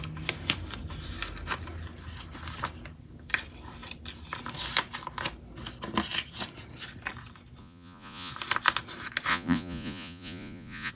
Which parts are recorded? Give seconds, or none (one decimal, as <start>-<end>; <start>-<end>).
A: 0.0-7.6; 8.3-9.3